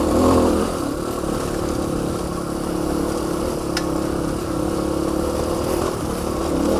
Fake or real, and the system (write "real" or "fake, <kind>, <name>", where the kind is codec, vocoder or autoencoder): real